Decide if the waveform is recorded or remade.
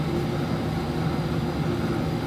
recorded